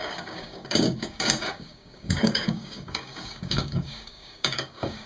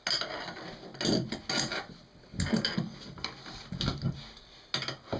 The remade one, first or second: first